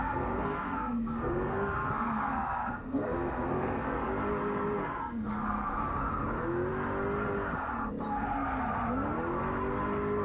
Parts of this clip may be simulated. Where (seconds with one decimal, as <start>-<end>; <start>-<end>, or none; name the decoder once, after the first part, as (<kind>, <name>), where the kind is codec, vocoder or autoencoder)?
0.0-4.1 (codec, SNAC); 4.8-5.9